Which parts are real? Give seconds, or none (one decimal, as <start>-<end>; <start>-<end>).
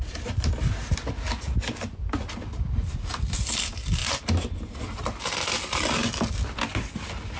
0.0-7.4